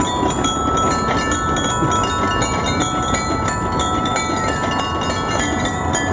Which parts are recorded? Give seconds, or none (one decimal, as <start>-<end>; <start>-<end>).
0.0-6.1